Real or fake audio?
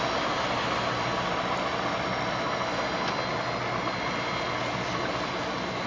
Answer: real